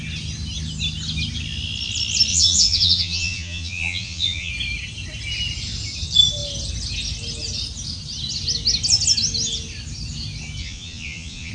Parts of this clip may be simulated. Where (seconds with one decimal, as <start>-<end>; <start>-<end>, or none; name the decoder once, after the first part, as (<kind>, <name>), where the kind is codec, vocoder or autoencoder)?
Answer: 2.3-4.5 (vocoder, Vocos); 10.6-11.5